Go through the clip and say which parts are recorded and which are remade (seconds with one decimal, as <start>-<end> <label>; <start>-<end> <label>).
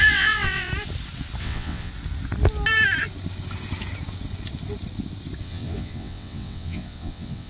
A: 0.0-0.7 remade; 0.7-1.4 recorded; 1.4-1.9 remade; 1.9-5.4 recorded; 5.4-7.5 remade